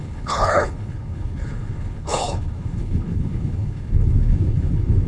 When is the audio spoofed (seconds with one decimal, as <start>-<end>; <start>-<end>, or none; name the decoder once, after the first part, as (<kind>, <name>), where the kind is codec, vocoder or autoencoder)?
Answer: 0.0-5.1 (codec, HILCodec)